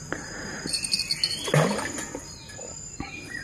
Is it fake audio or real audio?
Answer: real